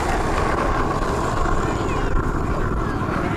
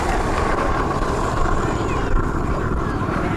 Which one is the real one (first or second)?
first